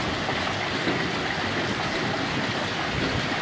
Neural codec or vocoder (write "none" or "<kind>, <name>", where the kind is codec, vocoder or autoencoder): none